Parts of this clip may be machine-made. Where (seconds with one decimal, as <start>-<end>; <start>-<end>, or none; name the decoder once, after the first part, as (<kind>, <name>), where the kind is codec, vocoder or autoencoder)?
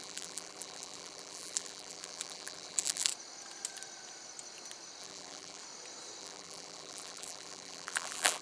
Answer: 0.0-3.1 (vocoder, BigVGAN v2); 5.0-5.6; 6.2-8.4